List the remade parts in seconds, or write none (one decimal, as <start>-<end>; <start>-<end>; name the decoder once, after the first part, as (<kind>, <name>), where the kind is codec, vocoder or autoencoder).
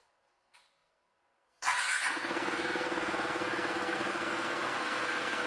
0.0-5.5 (codec, SNAC)